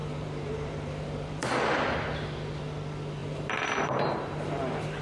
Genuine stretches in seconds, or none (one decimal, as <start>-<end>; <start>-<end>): 1.5-3.2